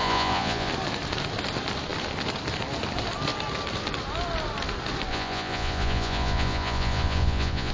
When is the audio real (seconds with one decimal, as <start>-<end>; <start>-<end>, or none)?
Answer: 0.7-5.1

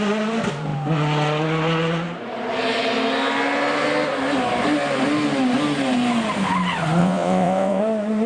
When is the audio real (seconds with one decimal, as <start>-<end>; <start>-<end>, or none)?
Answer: 0.0-7.0; 7.8-8.3

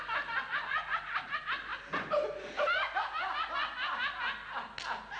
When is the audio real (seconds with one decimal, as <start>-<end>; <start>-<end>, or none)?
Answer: 0.0-5.2

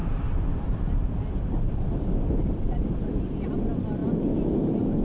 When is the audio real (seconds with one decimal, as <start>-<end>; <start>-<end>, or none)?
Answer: none

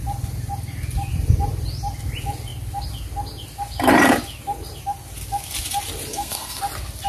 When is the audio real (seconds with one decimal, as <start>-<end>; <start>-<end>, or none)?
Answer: 0.0-6.1; 6.6-7.1